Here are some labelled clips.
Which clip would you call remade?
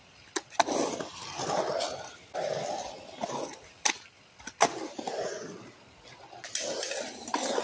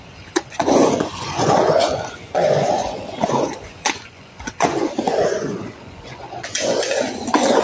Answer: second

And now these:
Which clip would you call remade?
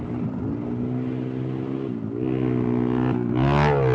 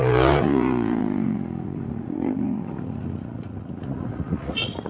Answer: second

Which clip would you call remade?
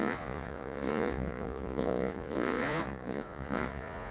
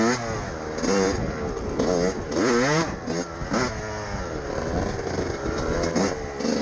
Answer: first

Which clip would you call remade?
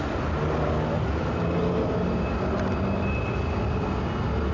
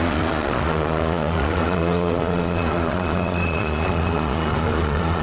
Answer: second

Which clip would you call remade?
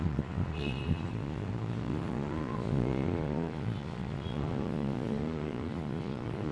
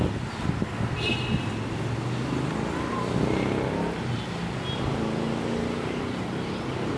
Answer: first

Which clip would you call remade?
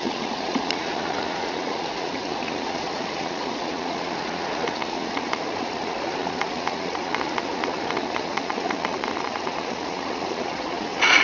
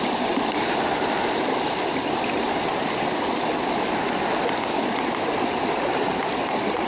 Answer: first